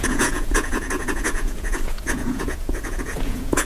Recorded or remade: remade